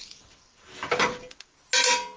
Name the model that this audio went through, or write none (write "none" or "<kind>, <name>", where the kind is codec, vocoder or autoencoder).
none